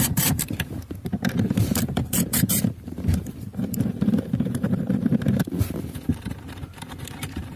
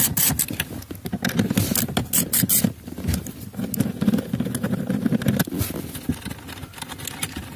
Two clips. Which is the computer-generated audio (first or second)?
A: first